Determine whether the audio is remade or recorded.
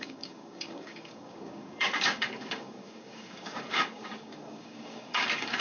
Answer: remade